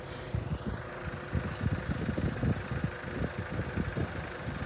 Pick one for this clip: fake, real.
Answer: real